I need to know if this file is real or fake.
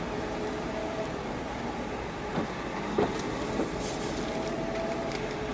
real